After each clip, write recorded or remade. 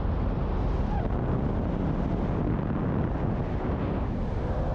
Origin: recorded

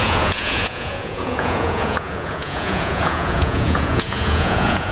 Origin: remade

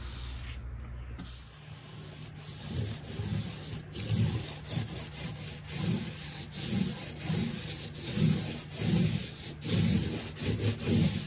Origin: recorded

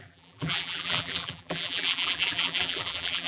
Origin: remade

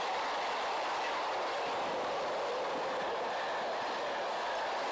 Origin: recorded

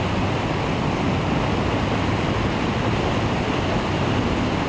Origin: recorded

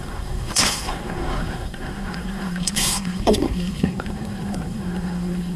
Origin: remade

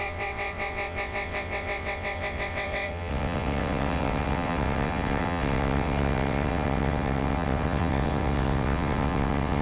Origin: remade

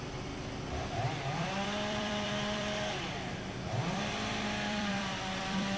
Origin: remade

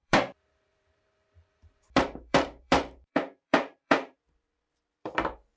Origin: remade